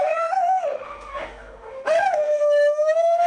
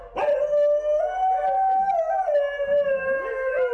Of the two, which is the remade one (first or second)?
first